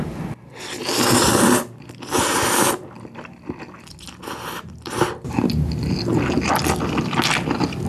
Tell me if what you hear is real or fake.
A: real